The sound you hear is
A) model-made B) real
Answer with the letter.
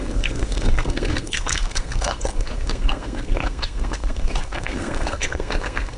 A